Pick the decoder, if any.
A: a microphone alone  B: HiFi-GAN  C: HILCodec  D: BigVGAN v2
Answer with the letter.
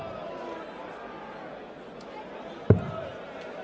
A